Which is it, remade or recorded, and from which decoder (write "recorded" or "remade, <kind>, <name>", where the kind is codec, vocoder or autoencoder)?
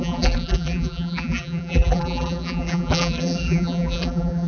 remade, vocoder, BigVGAN v2